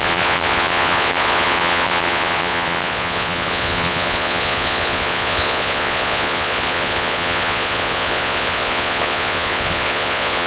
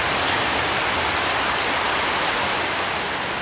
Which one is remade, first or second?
first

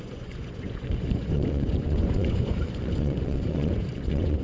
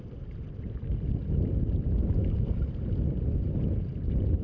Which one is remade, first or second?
first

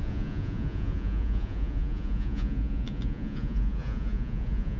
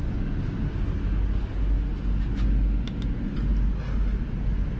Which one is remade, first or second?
first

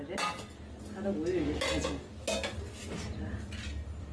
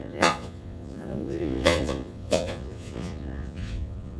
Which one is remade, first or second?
second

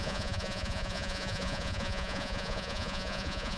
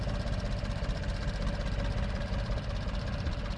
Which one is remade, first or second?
first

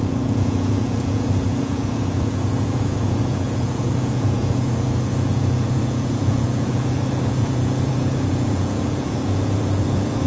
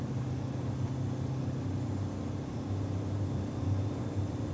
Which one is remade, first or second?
first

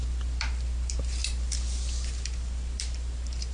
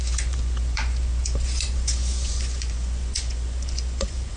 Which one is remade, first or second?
second